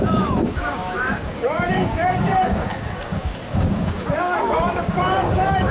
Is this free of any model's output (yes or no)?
no